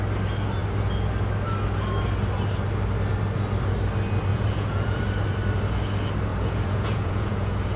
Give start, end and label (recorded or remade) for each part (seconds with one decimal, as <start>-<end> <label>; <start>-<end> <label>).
0.0-4.3 recorded; 4.3-5.0 remade; 5.0-6.3 recorded; 6.3-7.8 remade